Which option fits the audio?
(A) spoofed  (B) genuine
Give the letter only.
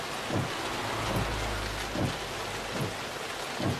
B